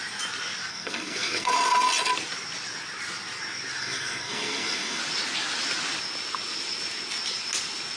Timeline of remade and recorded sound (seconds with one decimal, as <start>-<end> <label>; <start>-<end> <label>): 0.0-0.7 recorded; 0.7-1.5 remade; 1.5-3.8 recorded; 3.8-5.0 remade; 5.0-8.0 recorded